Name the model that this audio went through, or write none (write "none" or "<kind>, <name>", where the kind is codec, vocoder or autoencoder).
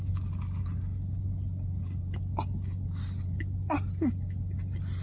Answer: none